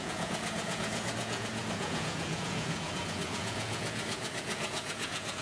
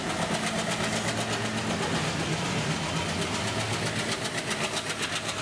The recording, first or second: second